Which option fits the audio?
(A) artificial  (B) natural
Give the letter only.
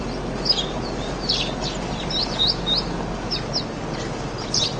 B